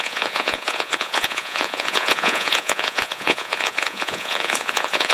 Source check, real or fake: fake